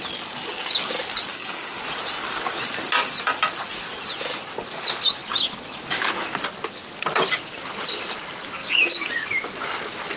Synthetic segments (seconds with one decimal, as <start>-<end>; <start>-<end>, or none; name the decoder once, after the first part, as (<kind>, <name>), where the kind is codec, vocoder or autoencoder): 1.3-1.8 (codec, DAC); 8.6-9.1